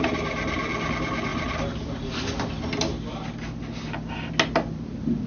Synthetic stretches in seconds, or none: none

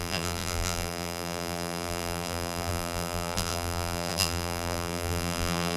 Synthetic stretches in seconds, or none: 0.0-5.8 (vocoder, BigVGAN v2)

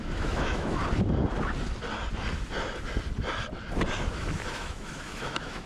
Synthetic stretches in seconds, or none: 0.0-0.8 (autoencoder, DAC-VAE); 4.1-5.7

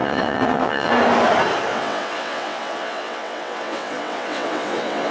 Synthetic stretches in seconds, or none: 0.0-0.9 (vocoder, WaveNeXt); 1.7-5.1

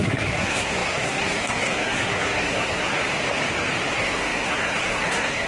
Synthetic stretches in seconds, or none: 0.0-2.9 (codec, SNAC); 3.9-5.5

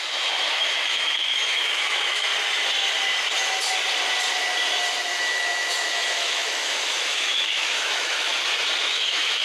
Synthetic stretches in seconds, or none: 0.0-2.3 (autoencoder, DAC-VAE); 5.0-8.3; 8.8-9.4

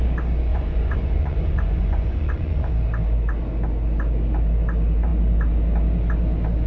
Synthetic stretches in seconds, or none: 0.5-2.7 (vocoder, Vocos)